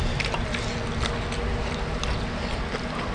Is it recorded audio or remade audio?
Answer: recorded